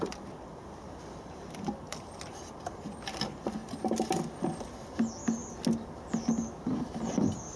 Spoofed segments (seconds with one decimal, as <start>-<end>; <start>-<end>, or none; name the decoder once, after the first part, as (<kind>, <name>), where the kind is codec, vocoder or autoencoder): none